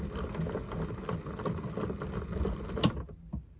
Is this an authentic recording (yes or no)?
yes